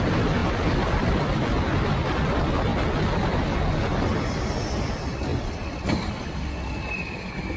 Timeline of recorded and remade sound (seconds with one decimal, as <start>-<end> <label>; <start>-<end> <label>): 0.0-0.4 recorded; 0.4-1.6 remade; 1.6-5.3 recorded; 5.3-6.1 remade; 6.1-7.6 recorded